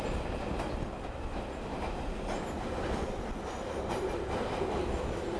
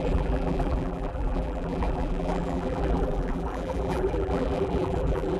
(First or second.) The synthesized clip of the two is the second